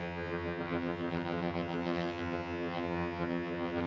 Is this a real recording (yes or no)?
no